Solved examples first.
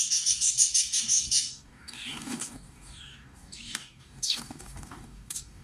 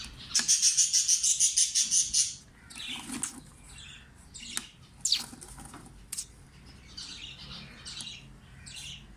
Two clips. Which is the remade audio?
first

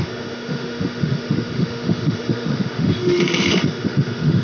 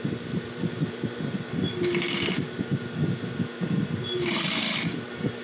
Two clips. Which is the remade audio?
first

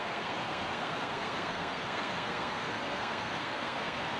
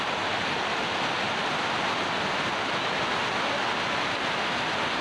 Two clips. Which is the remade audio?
first